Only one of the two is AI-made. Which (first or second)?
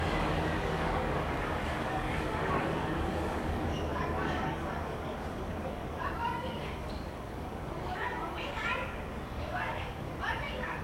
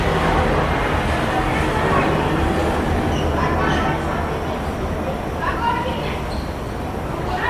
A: first